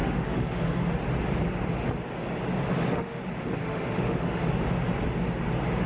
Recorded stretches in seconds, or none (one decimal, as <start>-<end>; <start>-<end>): 0.9-2.7; 3.2-3.6; 4.4-5.9